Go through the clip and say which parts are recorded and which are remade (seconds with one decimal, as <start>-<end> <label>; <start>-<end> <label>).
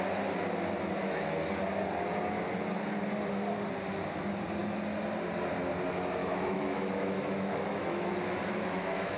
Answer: 0.0-1.0 recorded; 1.0-1.6 remade; 1.6-6.2 recorded; 6.2-9.2 remade